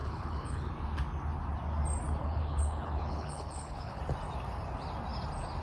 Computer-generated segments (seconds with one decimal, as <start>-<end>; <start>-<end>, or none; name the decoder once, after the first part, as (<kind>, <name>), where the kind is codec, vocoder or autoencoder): 0.0-0.7 (codec, HILCodec); 2.2-4.0